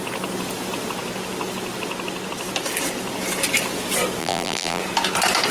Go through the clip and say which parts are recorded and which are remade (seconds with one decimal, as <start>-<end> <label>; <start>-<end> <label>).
0.0-4.2 recorded; 4.2-4.8 remade; 4.8-5.5 recorded